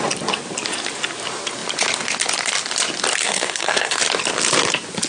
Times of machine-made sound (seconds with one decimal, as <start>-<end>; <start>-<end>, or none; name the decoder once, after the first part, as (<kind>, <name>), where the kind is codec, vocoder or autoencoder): 3.2-4.0 (codec, SNAC)